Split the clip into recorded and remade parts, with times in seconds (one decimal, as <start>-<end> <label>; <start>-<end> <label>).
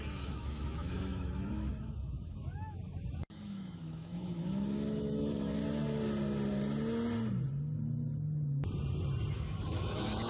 0.0-5.6 remade; 5.6-9.3 recorded; 9.3-10.3 remade